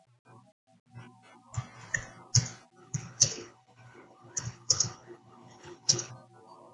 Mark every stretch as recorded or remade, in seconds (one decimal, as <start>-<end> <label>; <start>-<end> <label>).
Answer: 0.0-2.8 recorded; 2.8-6.1 remade; 6.1-6.7 recorded